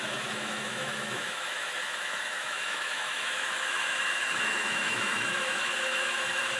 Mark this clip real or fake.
fake